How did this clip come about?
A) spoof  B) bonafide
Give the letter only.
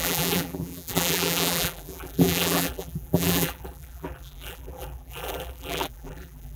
A